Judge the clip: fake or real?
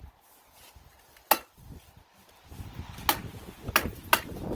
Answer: real